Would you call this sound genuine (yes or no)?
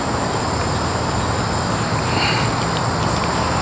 yes